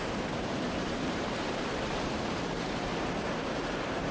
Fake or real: fake